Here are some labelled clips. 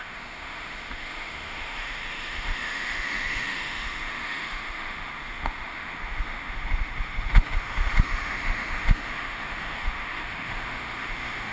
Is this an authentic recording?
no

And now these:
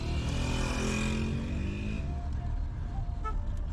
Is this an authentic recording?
yes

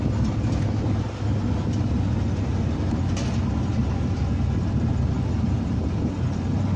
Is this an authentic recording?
yes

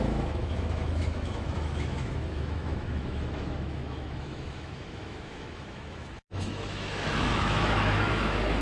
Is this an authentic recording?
no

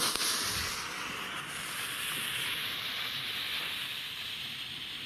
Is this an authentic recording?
yes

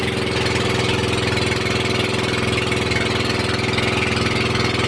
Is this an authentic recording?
yes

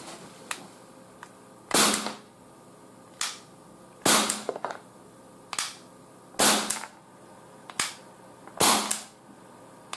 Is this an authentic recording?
yes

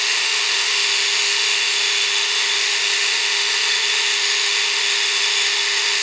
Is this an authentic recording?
no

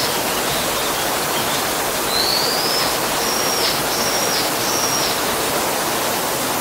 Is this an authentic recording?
yes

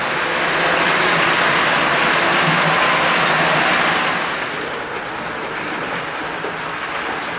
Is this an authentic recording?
yes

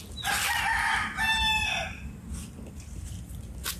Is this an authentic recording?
yes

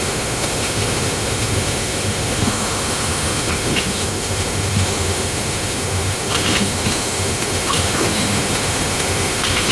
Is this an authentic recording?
no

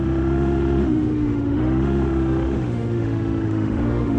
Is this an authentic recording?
no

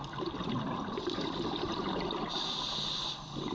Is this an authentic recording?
yes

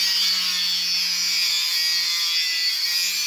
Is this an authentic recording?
yes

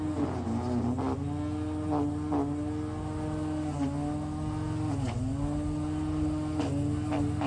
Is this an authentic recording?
yes